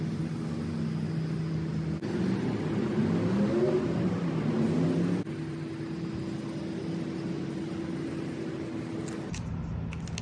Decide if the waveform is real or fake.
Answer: real